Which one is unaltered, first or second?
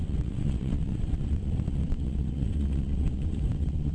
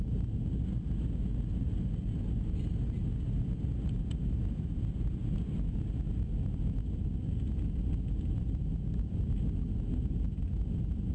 second